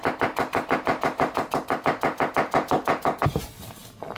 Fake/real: real